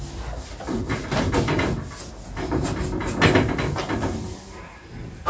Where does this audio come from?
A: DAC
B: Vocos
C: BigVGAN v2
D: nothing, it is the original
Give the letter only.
D